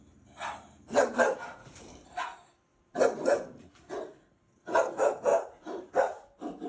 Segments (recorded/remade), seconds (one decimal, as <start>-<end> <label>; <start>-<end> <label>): 0.0-1.6 recorded; 1.6-2.2 remade; 2.2-2.7 recorded; 2.7-3.6 remade; 3.6-5.3 recorded; 5.3-5.9 remade; 5.9-6.7 recorded